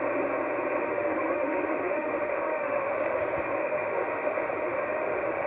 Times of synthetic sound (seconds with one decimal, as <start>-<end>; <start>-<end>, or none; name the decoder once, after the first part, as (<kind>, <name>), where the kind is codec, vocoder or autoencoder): 0.8-3.2 (autoencoder, DAC-VAE); 3.6-5.5

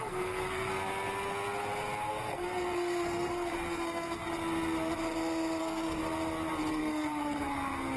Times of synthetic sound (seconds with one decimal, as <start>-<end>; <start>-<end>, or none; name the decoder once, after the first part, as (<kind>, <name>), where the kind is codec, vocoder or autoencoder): 0.0-0.7 (codec, SNAC); 2.1-4.3; 5.6-6.0; 6.7-8.0

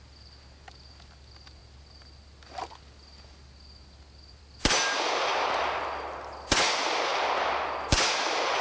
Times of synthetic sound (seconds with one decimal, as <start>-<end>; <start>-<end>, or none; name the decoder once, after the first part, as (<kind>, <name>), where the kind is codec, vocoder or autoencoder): none